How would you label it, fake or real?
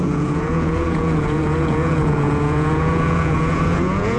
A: fake